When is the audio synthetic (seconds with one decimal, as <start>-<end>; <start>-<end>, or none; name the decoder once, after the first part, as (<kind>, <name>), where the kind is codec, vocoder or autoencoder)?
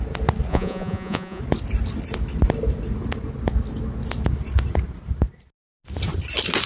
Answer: 0.5-1.4 (vocoder, Vocos)